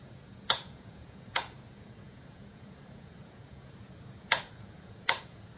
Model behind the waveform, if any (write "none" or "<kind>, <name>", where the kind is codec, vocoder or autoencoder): vocoder, Vocos